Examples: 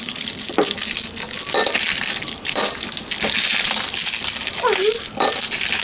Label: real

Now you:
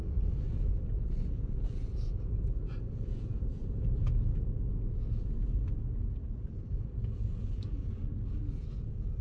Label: fake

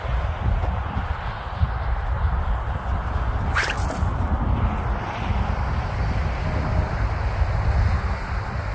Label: real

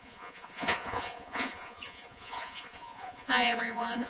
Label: fake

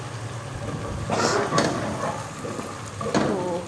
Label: real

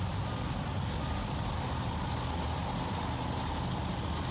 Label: real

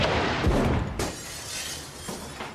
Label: real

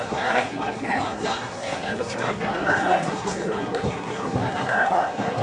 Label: fake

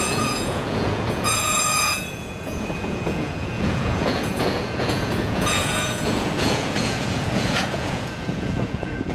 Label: fake